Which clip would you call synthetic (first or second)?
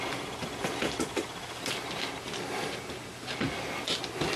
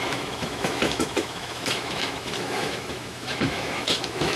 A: second